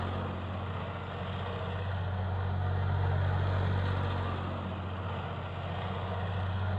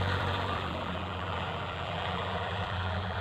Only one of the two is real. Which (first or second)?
first